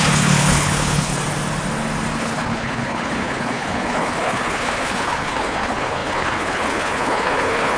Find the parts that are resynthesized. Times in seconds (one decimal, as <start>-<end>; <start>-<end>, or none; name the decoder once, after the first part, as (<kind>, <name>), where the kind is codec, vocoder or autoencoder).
0.0-1.1 (codec, HILCodec); 2.2-7.8

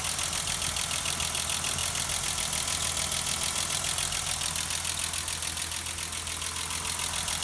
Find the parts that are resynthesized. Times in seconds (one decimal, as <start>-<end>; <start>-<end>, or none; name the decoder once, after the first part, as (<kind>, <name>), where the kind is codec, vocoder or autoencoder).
none

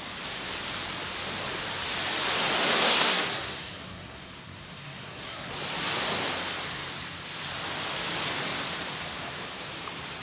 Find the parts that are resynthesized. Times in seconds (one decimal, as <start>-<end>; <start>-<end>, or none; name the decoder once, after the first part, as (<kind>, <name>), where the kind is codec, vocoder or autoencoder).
2.7-5.5 (codec, SNAC)

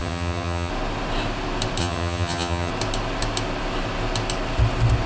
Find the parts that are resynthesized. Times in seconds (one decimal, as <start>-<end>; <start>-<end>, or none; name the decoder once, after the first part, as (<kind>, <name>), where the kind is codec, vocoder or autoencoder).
0.0-0.7 (vocoder, HiFi-GAN); 1.8-2.7

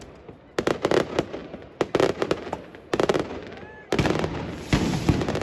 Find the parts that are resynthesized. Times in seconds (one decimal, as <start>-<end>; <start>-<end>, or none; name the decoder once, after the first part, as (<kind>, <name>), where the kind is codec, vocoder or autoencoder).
none

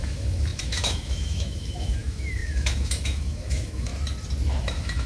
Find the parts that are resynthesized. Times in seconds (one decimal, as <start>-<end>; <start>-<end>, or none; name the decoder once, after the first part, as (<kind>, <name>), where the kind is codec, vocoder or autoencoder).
0.0-3.9 (autoencoder, DAC-VAE); 4.6-5.1

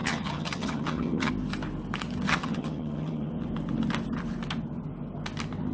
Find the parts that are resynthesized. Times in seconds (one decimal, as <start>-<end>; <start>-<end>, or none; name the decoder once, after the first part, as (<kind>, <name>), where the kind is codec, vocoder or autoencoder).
0.0-1.3 (vocoder, HiFi-GAN); 2.3-3.3

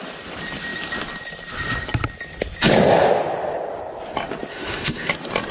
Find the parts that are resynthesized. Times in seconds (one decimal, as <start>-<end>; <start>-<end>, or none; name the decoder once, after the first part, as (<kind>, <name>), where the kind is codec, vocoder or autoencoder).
4.5-5.1 (autoencoder, DAC-VAE)